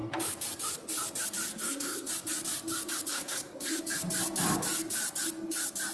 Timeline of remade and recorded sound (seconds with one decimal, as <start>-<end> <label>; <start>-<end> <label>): 0.0-1.5 recorded; 1.5-2.1 remade; 2.1-3.1 recorded; 3.1-3.8 remade; 3.8-5.9 recorded